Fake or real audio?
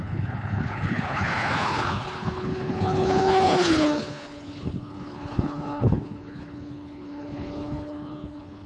fake